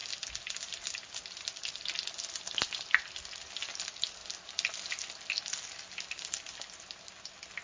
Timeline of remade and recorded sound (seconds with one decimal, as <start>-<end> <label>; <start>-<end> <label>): 0.0-7.6 recorded